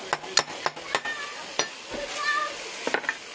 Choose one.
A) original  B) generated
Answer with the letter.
A